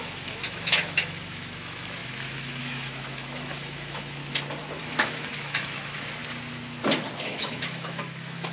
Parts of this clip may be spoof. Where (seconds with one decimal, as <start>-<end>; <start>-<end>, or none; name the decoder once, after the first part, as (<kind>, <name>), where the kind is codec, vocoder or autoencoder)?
0.0-4.2 (autoencoder, DAC-VAE); 4.8-6.2; 7.2-8.5